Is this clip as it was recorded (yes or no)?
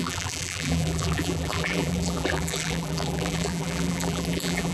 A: no